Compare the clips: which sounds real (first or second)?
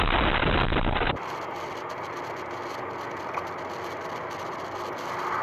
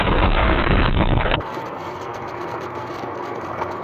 first